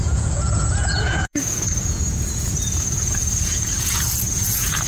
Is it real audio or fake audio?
fake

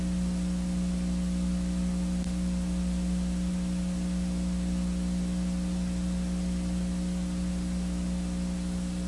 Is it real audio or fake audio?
real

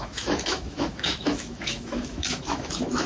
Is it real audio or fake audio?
fake